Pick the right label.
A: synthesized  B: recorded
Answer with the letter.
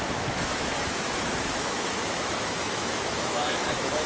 A